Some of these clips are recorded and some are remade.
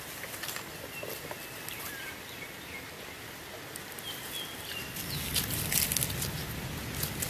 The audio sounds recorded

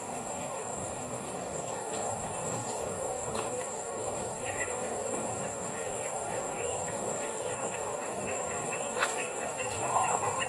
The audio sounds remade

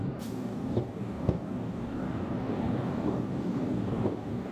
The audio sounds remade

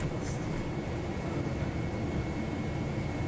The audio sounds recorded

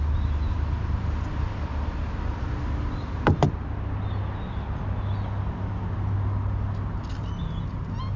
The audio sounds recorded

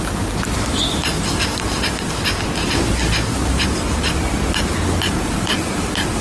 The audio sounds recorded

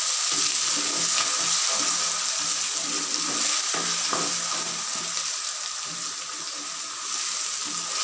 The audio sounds recorded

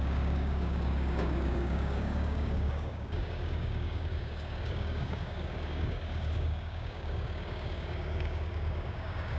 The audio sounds remade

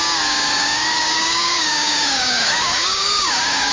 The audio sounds remade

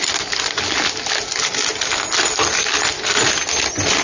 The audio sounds recorded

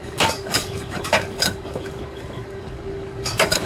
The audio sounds remade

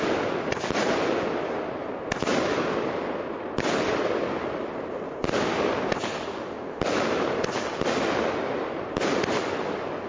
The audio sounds recorded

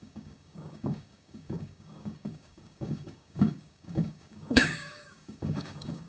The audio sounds remade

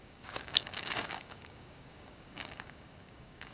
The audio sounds remade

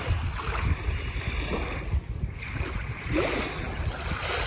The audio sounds recorded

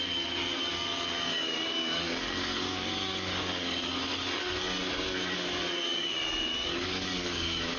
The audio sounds remade